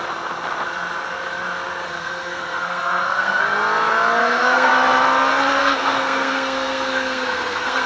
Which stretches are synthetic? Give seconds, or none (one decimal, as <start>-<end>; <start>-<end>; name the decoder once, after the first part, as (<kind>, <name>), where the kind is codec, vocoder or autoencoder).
1.8-3.4 (codec, SNAC); 4.2-4.7; 5.6-7.9